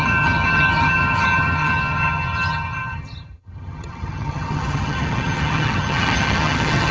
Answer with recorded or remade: remade